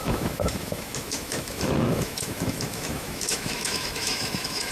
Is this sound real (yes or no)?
no